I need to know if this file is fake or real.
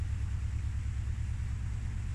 real